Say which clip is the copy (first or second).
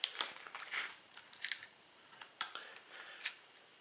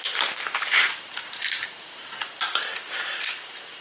first